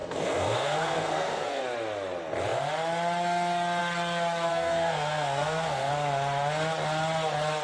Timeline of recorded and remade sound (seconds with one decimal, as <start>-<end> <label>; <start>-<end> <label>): 0.0-1.6 remade; 1.6-4.5 recorded; 4.5-5.9 remade; 5.9-7.6 recorded

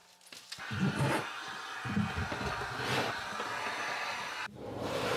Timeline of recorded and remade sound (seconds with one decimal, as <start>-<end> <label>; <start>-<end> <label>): 0.0-5.2 recorded

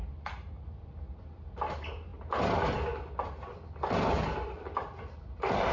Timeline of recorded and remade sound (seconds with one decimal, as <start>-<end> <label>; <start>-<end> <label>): 0.0-5.7 recorded

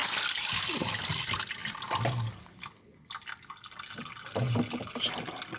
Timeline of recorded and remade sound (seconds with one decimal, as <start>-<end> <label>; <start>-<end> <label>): 0.0-5.6 recorded

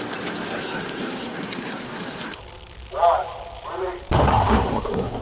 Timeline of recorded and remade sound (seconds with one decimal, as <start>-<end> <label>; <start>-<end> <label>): 0.0-0.6 recorded; 0.6-2.4 remade; 2.4-4.3 recorded; 4.3-5.2 remade

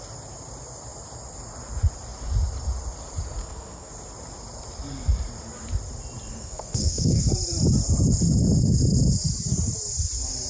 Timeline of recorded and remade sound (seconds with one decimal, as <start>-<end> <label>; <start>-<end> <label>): 0.0-3.4 recorded; 3.4-3.9 remade; 3.9-6.3 recorded; 6.3-7.3 remade; 7.3-10.5 recorded

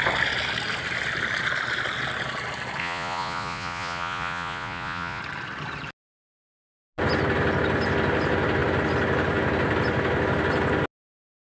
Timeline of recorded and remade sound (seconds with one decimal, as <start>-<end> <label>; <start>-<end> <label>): 0.0-2.8 recorded; 2.8-5.2 remade; 5.2-11.4 recorded

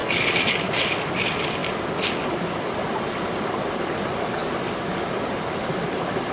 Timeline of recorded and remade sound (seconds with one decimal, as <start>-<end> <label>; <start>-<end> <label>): 0.0-1.6 remade; 1.6-2.1 recorded; 2.1-6.3 remade